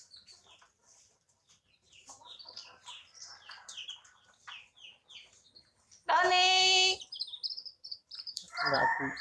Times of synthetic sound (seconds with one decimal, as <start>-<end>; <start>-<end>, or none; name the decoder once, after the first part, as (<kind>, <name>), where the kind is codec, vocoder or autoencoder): 0.0-3.3 (vocoder, BigVGAN v2); 7.6-9.2